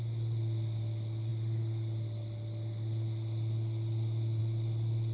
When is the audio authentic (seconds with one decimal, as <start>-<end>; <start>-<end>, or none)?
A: 0.0-5.1